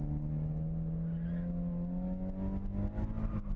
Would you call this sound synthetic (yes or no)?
no